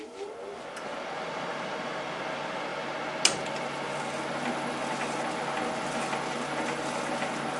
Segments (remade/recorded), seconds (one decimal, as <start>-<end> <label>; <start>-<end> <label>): 0.0-0.9 recorded; 0.9-2.0 remade; 2.0-7.6 recorded